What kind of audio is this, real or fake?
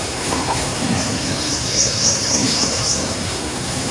fake